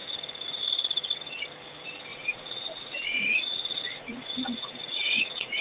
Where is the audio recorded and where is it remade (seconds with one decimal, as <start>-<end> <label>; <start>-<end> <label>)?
0.0-2.1 recorded; 2.1-5.6 remade